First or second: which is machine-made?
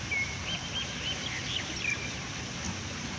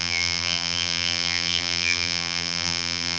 second